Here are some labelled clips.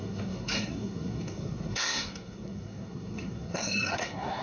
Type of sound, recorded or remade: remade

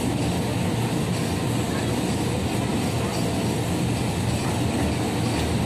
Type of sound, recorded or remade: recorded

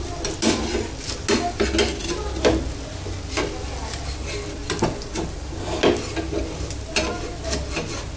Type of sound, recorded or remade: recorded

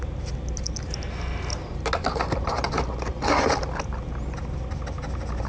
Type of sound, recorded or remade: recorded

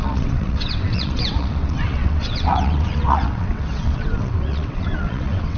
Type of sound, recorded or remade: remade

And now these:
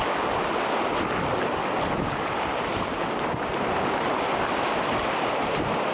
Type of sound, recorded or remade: recorded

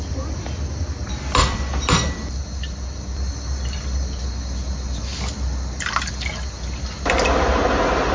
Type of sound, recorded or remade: recorded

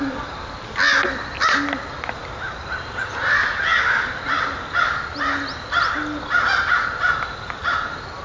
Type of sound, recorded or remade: recorded